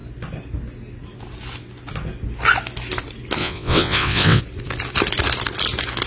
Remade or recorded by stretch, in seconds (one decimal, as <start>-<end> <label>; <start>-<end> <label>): 0.0-3.4 recorded; 3.4-4.4 remade; 4.4-6.1 recorded

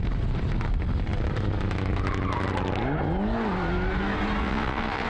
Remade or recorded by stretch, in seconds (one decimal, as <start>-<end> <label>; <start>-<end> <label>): 0.0-4.4 recorded; 4.4-5.1 remade